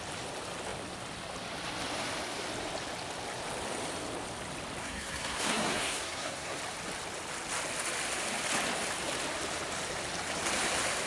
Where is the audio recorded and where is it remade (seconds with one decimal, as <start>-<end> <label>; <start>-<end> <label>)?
0.0-4.8 recorded; 4.8-6.6 remade; 6.6-11.1 recorded